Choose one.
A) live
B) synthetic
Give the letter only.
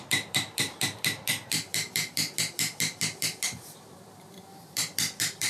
B